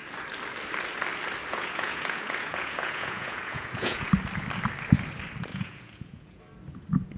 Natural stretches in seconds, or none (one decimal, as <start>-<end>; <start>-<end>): 0.0-1.5; 4.1-5.5; 6.4-7.2